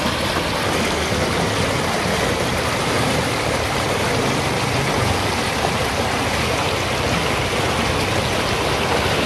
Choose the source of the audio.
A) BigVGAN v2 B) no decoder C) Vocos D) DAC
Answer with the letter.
B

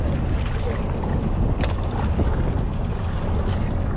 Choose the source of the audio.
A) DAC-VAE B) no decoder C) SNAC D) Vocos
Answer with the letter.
B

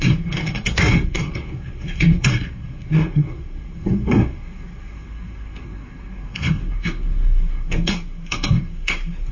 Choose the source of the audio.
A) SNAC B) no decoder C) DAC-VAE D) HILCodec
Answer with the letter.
A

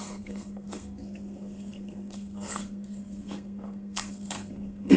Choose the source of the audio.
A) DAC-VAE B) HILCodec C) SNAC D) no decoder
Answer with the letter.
C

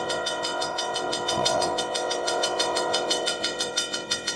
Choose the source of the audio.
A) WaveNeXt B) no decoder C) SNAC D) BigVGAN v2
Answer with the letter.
A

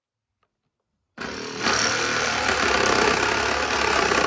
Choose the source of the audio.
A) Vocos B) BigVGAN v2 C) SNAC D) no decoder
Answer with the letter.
D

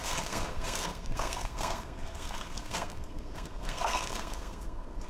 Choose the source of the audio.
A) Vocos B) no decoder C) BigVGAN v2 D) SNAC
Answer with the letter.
D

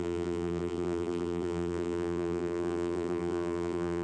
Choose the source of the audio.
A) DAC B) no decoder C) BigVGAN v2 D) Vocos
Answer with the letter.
C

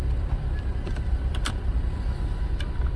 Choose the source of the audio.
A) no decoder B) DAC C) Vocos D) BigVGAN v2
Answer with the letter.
D